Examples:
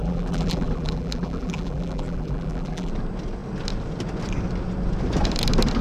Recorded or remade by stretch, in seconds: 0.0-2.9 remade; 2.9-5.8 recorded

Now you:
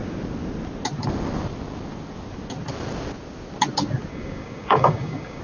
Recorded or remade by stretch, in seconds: 0.0-4.1 recorded; 4.1-5.4 remade

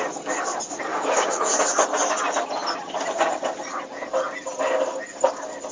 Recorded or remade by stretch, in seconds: 0.0-0.9 recorded; 0.9-1.5 remade; 1.5-5.7 recorded